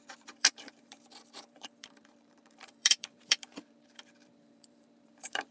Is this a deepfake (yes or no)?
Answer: yes